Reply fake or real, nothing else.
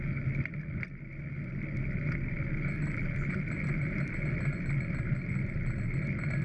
real